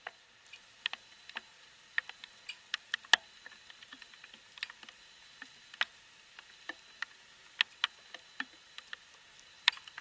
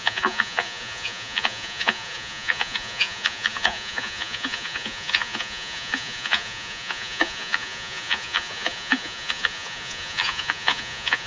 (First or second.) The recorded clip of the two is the first